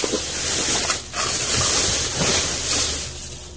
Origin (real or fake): real